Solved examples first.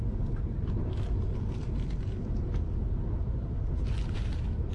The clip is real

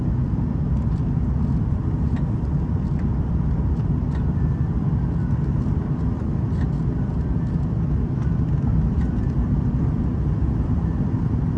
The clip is real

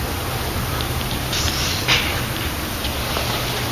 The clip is real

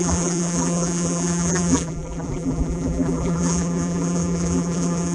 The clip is fake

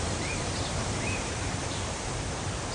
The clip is fake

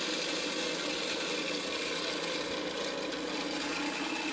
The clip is real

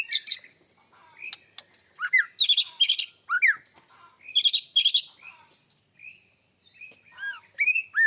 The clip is real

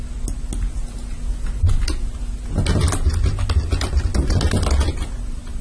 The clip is real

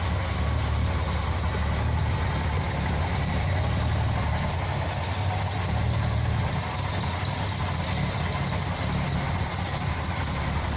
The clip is real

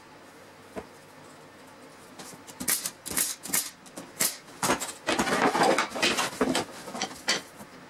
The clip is real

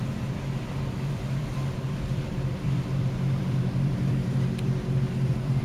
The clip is fake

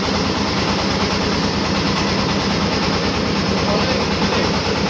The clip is real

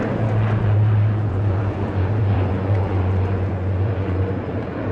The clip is fake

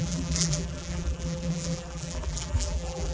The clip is fake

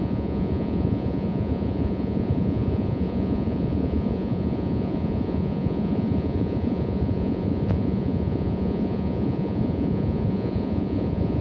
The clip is fake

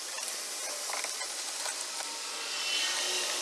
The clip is real